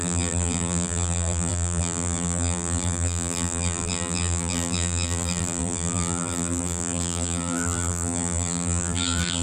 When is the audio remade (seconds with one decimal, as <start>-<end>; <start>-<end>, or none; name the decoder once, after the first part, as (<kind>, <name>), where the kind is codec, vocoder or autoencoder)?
0.0-9.4 (vocoder, BigVGAN v2)